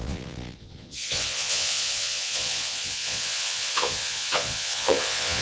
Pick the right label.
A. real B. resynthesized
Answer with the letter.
B